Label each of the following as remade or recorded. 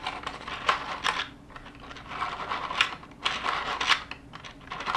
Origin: recorded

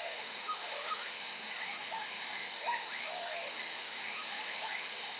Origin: remade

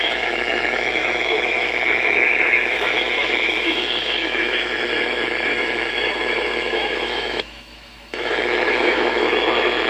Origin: remade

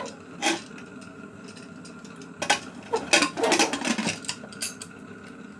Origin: recorded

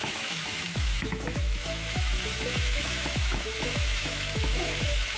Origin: remade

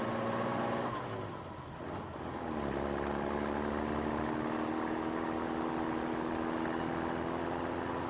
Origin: recorded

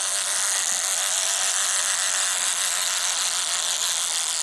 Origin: recorded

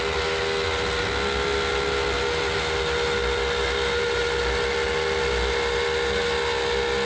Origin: recorded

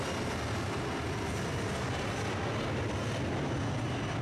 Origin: recorded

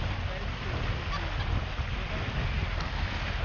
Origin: recorded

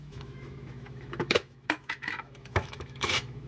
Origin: remade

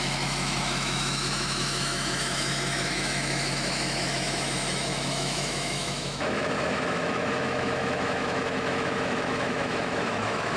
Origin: remade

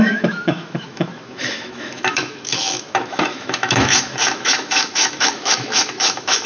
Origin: remade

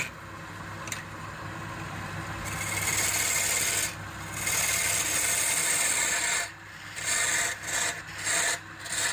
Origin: recorded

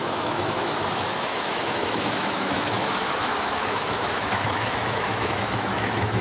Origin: remade